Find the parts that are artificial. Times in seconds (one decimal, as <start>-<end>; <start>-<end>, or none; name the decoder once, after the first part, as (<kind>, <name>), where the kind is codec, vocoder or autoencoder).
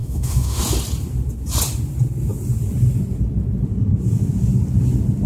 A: 0.0-0.6 (autoencoder, DAC-VAE)